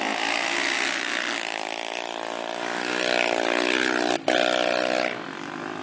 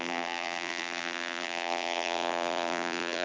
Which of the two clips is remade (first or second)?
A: second